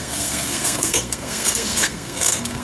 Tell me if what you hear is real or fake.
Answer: fake